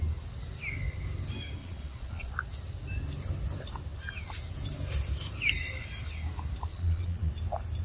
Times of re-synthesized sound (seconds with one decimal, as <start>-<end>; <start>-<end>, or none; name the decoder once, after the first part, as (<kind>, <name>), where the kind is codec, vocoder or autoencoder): 1.6-2.3 (vocoder, Vocos); 6.7-7.3